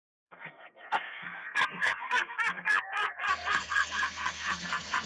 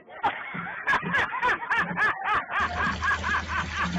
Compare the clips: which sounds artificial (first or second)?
first